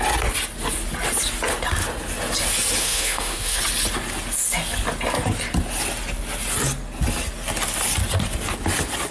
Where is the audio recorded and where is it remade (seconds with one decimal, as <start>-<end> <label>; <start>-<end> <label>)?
0.0-2.8 recorded; 2.8-3.6 remade; 3.6-9.1 recorded